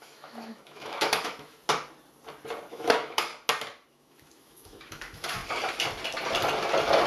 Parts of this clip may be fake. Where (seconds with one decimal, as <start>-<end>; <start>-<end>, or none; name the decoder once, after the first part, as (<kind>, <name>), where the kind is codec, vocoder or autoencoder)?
0.0-1.6 (autoencoder, DAC-VAE); 2.7-3.3; 3.9-5.4

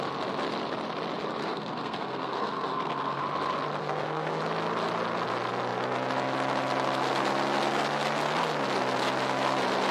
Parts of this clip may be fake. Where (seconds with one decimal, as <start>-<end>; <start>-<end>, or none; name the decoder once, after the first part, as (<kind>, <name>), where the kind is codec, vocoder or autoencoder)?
1.4-3.2 (codec, SNAC); 3.8-4.4

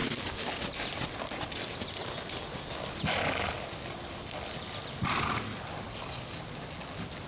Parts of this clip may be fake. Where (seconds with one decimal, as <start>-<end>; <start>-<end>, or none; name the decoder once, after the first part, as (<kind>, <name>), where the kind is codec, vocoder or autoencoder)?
0.0-0.6 (codec, DAC); 5.9-6.4

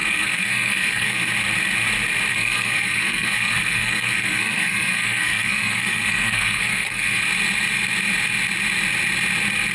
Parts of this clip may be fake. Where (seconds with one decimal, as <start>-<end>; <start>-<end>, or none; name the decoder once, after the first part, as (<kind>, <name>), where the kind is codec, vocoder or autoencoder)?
0.0-1.3 (codec, SNAC); 2.3-7.2